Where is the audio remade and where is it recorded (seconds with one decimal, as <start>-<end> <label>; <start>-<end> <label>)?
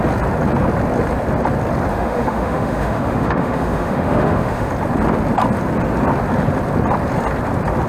0.0-1.9 recorded; 1.9-4.7 remade; 4.7-7.9 recorded